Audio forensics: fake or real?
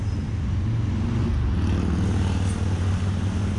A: real